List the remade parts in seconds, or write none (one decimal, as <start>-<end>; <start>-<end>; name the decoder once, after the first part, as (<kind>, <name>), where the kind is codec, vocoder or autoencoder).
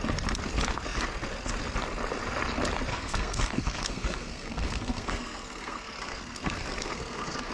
2.9-7.5 (codec, SNAC)